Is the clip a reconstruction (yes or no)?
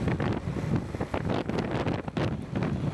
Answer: no